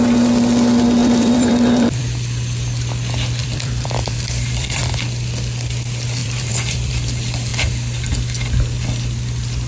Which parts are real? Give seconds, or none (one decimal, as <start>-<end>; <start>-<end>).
0.0-1.0; 2.0-3.4; 4.8-6.2; 6.9-9.7